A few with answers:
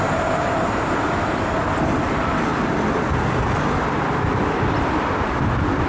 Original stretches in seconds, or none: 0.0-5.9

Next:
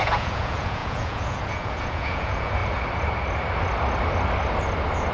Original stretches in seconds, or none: 2.6-5.1

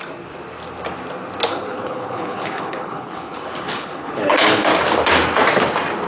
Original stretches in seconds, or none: 0.0-1.5; 4.6-6.1

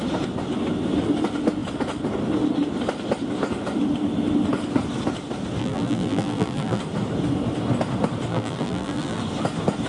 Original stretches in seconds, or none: 0.0-5.6; 6.8-8.3; 9.2-9.9

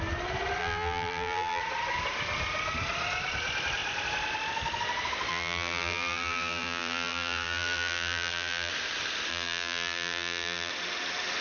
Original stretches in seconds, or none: 0.0-0.6; 1.6-5.3; 8.7-9.3; 10.7-11.4

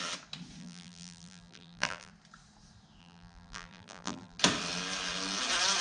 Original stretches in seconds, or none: 0.0-0.6; 2.1-3.0; 4.4-5.8